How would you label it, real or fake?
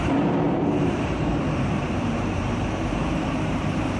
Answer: fake